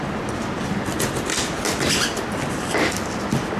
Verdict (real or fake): real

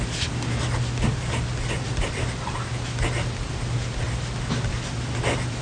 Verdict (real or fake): real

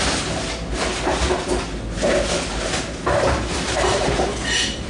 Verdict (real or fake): real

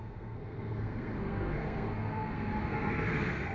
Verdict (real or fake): fake